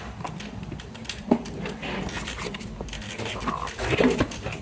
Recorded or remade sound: recorded